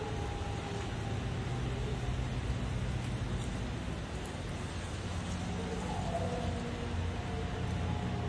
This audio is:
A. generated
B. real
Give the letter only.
B